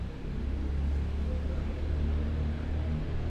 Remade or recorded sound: recorded